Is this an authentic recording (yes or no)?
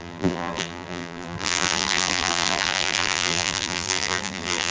no